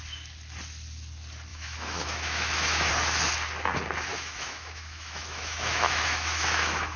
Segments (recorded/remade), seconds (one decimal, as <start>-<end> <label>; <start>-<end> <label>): 0.0-1.5 recorded; 1.5-2.9 remade; 2.9-4.1 recorded; 4.1-7.0 remade

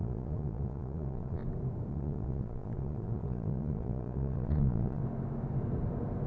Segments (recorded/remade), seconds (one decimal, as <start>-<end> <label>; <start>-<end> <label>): 0.0-1.4 remade; 1.4-1.9 recorded; 1.9-5.0 remade; 5.0-6.3 recorded